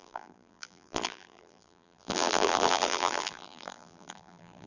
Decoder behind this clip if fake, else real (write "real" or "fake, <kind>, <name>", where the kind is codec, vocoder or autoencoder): fake, vocoder, BigVGAN v2